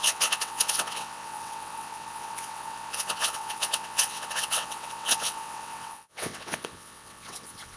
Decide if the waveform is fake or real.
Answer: fake